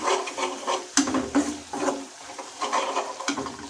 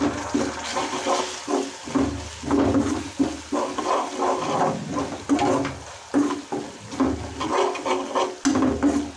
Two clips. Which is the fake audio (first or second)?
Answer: first